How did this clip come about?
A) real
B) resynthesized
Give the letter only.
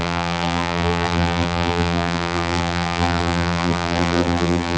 B